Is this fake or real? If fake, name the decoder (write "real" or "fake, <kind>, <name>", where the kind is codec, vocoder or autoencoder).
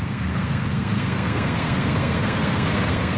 fake, codec, SNAC